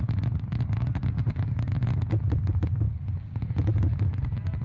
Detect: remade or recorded recorded